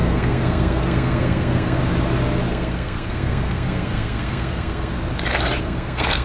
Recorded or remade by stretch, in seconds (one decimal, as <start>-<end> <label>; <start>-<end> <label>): 0.0-1.8 remade; 1.8-2.5 recorded; 2.5-4.9 remade; 4.9-5.6 recorded; 5.6-6.2 remade